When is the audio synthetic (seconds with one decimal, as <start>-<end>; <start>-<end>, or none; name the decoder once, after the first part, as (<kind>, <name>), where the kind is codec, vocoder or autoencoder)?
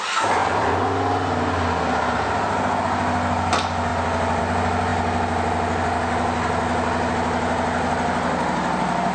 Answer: none